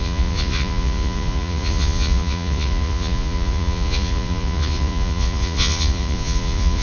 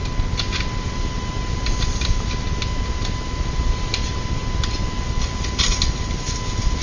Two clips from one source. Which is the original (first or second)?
second